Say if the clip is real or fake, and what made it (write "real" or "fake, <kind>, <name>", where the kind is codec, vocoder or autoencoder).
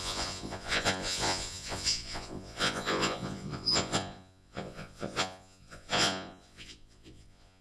fake, vocoder, Vocos